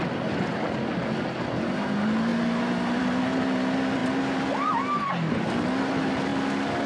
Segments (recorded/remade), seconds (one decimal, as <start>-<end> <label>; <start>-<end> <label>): 0.0-6.9 recorded

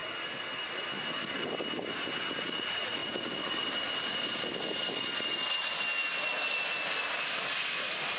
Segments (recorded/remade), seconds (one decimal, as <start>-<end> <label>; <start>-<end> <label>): 0.0-2.4 recorded; 2.4-3.0 remade; 3.0-7.5 recorded; 7.5-8.2 remade

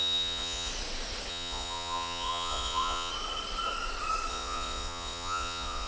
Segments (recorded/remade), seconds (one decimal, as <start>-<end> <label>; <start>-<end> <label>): 0.0-0.7 remade; 0.7-1.3 recorded; 1.3-3.1 remade; 3.1-4.3 recorded; 4.3-5.9 remade

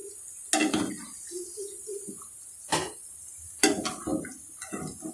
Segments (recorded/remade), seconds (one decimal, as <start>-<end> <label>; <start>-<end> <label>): 0.0-5.1 recorded